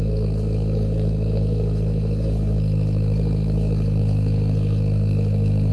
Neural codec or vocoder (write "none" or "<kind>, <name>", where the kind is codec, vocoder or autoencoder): codec, SNAC